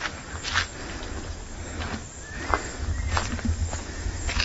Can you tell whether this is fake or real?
real